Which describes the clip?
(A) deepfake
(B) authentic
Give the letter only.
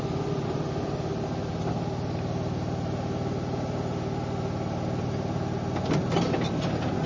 B